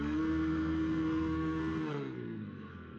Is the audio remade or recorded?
remade